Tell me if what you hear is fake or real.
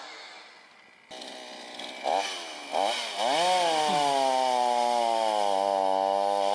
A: real